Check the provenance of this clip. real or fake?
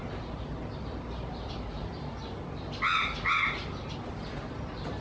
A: real